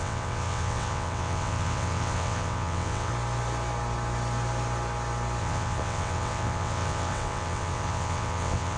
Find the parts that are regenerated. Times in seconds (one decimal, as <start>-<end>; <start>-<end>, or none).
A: 0.0-3.1; 5.4-8.8

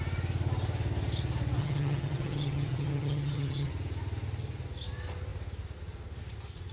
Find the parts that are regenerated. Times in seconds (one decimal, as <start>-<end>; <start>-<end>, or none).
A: 1.6-3.7

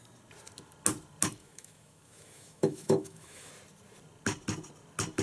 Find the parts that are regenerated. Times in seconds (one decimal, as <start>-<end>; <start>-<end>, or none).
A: 1.4-3.5